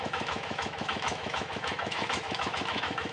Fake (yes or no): yes